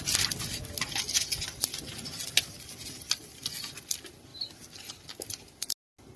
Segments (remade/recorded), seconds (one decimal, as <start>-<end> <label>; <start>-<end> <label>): 0.0-6.2 recorded